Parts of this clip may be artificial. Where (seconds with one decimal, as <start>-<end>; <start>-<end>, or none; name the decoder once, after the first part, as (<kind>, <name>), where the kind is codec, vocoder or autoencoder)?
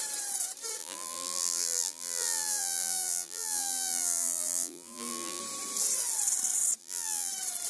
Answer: 0.8-5.4 (vocoder, BigVGAN v2); 6.8-7.3